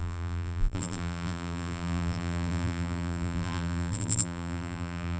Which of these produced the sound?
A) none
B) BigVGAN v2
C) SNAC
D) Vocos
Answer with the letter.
B